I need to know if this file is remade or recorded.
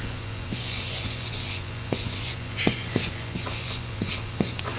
remade